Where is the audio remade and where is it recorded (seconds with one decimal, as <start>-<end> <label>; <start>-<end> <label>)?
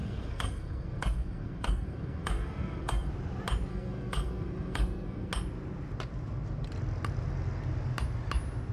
0.0-3.1 remade; 3.1-3.7 recorded; 3.7-5.3 remade; 5.3-8.7 recorded